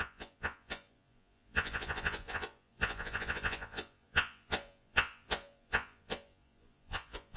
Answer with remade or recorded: remade